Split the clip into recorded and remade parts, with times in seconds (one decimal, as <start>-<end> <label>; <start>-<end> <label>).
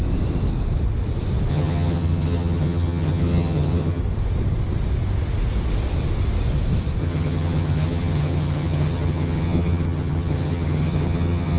0.0-1.5 recorded; 1.5-4.0 remade; 4.0-7.0 recorded; 7.0-11.6 remade